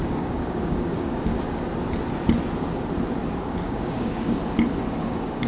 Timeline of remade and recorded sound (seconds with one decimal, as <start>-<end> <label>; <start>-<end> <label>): 0.0-1.3 remade; 1.3-3.4 recorded; 3.4-4.4 remade; 4.4-5.0 recorded; 5.0-5.5 remade